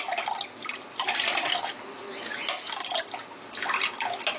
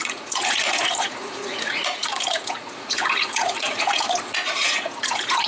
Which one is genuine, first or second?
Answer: first